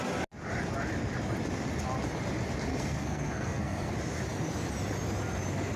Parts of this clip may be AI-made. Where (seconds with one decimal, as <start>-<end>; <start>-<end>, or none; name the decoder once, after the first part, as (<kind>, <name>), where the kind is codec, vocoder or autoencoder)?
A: 2.7-3.9 (codec, SNAC)